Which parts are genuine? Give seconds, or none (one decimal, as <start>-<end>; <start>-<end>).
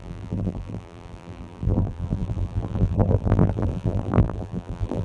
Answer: none